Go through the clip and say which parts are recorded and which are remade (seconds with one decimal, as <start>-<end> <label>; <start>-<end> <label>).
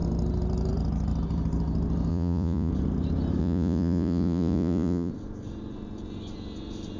0.0-2.1 recorded; 2.1-2.7 remade; 2.7-3.4 recorded; 3.4-5.1 remade; 5.1-7.0 recorded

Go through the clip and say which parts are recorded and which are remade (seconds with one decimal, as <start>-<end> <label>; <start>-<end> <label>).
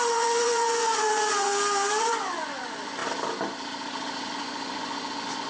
0.0-1.5 remade; 1.5-2.0 recorded; 2.0-3.0 remade; 3.0-4.3 recorded; 4.3-5.5 remade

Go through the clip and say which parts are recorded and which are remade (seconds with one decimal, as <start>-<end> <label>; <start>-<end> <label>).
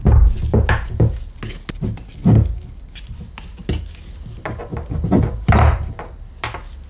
0.0-6.9 recorded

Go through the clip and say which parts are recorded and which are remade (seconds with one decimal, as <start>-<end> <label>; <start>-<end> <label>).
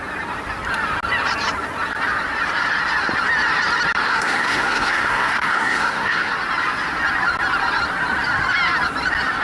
0.0-4.0 recorded; 4.0-6.3 remade; 6.3-9.4 recorded